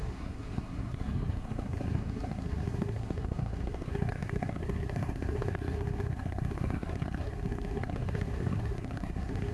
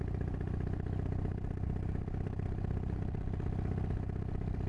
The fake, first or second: first